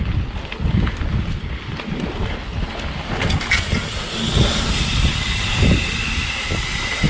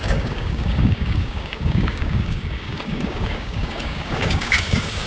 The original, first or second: first